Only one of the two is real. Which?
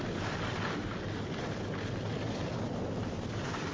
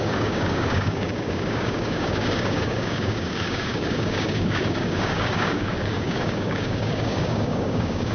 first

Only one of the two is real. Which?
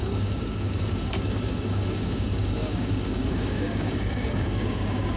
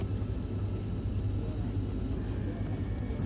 second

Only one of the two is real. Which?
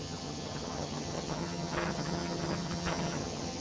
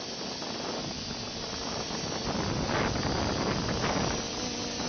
second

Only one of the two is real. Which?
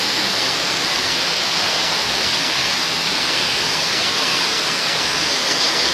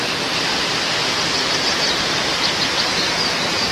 second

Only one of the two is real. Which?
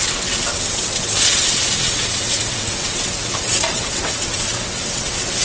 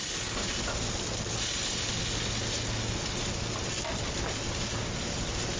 second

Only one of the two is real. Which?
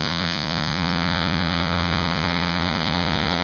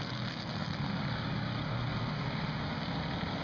second